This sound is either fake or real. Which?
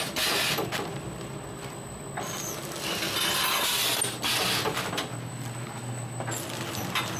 real